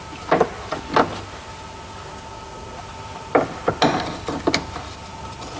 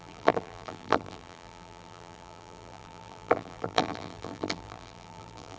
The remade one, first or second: second